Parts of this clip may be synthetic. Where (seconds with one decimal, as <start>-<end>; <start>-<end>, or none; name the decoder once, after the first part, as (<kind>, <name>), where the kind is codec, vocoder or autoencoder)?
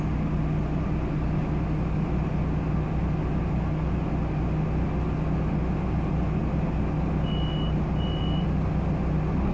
none